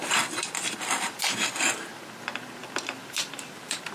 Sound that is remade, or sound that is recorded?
recorded